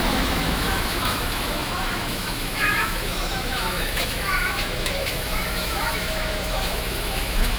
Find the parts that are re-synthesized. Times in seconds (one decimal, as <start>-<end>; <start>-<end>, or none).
0.0-7.6